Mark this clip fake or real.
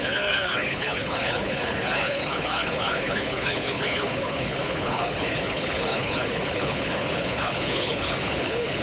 fake